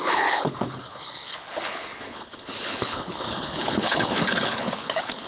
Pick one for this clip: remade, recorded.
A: remade